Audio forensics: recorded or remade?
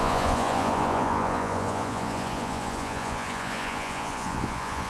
remade